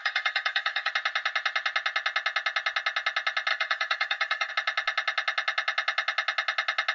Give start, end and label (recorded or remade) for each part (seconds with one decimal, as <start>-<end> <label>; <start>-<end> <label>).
0.0-0.9 remade; 0.9-3.5 recorded; 3.5-4.5 remade; 4.5-6.9 recorded